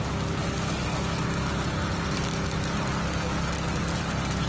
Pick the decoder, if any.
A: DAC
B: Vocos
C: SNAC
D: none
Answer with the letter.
D